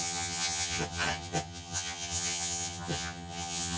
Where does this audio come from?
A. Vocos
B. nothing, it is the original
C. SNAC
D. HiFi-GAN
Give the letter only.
D